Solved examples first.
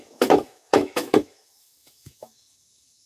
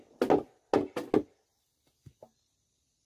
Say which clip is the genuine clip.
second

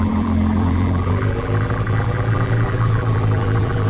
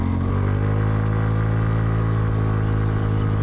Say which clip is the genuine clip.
second